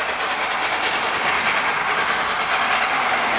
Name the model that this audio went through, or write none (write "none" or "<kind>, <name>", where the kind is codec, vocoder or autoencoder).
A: none